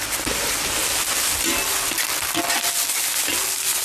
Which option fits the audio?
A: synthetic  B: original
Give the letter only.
B